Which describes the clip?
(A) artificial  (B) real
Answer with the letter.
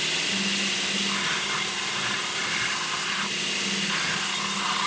B